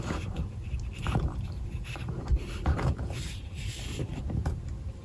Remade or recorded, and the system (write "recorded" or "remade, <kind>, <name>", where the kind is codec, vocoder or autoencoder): remade, vocoder, BigVGAN v2